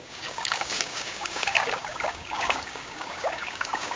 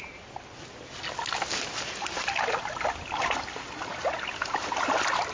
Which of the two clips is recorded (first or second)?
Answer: second